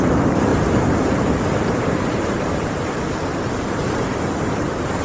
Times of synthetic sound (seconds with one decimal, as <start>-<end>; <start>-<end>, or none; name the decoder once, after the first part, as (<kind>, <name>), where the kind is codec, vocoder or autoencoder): 0.5-3.5 (vocoder, BigVGAN v2)